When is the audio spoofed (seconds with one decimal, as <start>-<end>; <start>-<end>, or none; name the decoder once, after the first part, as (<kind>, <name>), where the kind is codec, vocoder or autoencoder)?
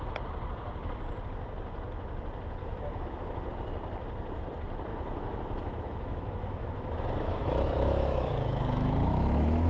2.6-3.5 (autoencoder, DAC-VAE); 4.9-9.7